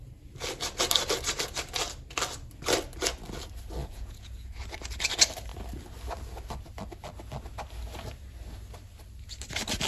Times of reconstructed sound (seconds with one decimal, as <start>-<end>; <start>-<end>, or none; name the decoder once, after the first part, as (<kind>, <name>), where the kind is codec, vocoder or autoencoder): 3.8-4.5 (vocoder, Vocos)

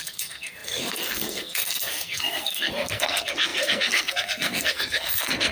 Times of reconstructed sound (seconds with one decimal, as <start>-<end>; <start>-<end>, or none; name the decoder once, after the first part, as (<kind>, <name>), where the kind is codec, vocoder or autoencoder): 0.0-5.5 (codec, SNAC)

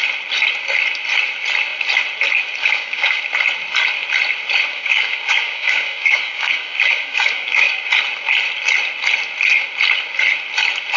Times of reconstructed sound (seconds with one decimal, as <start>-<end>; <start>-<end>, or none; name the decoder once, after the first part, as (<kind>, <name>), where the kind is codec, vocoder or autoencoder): 2.6-3.2 (codec, DAC); 4.7-7.9

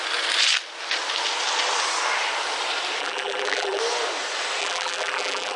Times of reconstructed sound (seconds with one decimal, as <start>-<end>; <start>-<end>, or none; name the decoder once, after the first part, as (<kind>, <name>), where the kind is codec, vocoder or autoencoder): 3.0-3.8 (vocoder, BigVGAN v2); 4.6-5.6

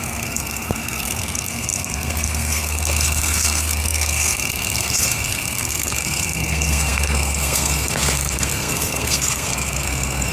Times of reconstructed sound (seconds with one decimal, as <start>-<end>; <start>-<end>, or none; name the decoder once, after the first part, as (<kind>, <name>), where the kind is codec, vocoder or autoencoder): 0.0-10.3 (codec, SNAC)

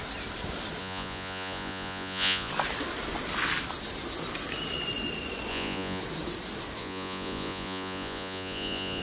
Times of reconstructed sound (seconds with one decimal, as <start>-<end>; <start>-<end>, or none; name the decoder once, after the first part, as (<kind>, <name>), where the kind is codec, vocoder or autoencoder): 0.8-2.5 (vocoder, Vocos); 5.5-6.0; 6.8-9.0